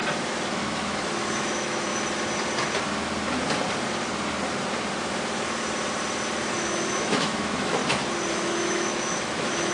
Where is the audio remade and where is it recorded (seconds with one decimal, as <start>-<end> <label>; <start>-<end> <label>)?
0.0-0.5 recorded; 0.5-1.9 remade; 1.9-6.5 recorded; 6.5-7.8 remade; 7.8-8.3 recorded; 8.3-9.7 remade